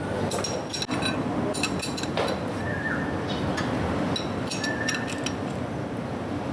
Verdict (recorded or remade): recorded